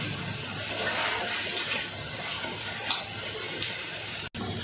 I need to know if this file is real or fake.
real